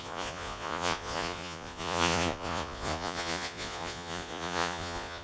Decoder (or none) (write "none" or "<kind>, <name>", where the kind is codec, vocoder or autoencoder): vocoder, Vocos